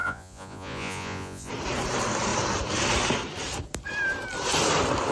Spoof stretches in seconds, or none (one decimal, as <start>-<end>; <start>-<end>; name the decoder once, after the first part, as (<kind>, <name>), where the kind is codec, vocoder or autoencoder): 0.0-1.5 (vocoder, Vocos)